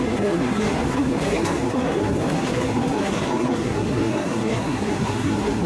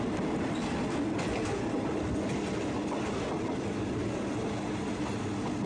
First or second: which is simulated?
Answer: first